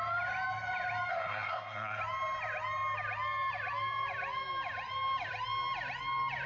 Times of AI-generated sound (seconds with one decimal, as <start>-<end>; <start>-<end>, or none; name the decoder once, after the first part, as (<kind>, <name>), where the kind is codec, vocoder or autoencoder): 1.1-2.0 (codec, SNAC)